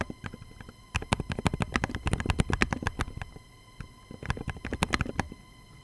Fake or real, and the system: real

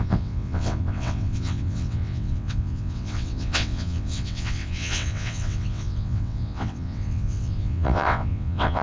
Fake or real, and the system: fake, vocoder, WaveNeXt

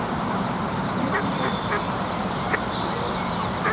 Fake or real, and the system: fake, vocoder, BigVGAN v2